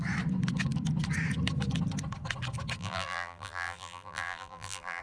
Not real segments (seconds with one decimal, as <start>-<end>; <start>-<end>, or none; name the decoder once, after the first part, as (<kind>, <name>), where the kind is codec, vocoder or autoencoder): 2.8-5.0 (vocoder, BigVGAN v2)